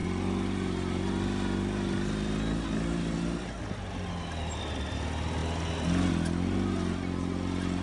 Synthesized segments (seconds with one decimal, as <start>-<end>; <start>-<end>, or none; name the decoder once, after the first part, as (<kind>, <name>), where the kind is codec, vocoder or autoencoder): none